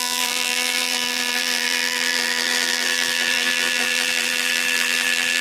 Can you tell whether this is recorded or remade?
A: remade